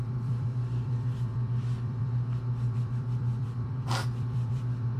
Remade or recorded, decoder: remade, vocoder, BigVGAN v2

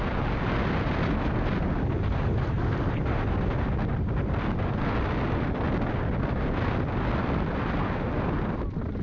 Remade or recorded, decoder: recorded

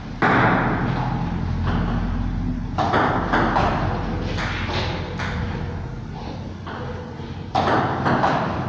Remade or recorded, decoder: recorded